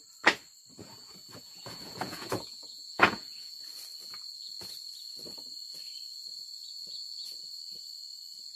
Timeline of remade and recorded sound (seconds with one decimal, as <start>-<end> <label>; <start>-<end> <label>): 0.0-0.8 recorded; 0.8-3.6 remade; 3.6-8.6 recorded